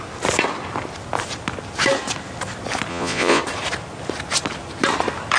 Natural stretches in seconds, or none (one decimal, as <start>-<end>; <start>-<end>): 0.0-2.9; 3.4-5.4